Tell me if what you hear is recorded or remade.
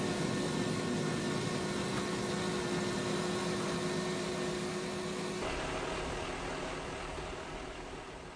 recorded